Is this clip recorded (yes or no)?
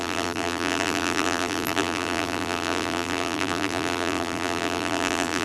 no